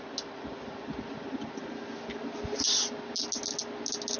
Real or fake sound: real